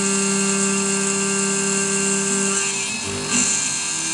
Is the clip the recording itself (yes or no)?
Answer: yes